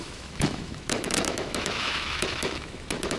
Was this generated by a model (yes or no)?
yes